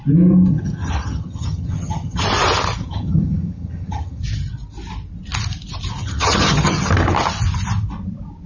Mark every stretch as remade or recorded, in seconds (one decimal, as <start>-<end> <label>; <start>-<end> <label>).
0.0-0.5 recorded; 0.5-2.2 remade; 2.2-2.8 recorded; 2.8-4.2 remade; 4.2-6.0 recorded; 6.0-6.9 remade; 6.9-8.5 recorded